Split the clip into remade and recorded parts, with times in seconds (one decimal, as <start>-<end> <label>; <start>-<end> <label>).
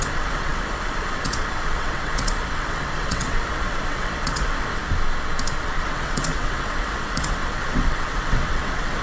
0.0-4.8 remade; 4.8-5.8 recorded; 5.8-9.0 remade